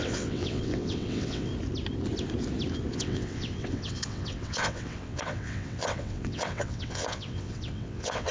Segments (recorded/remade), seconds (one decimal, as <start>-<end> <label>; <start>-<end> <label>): 0.0-1.5 remade; 1.5-2.9 recorded; 2.9-8.3 remade